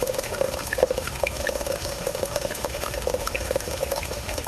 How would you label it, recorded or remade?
remade